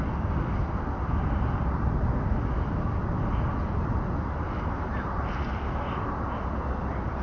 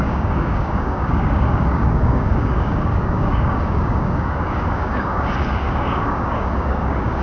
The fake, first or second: second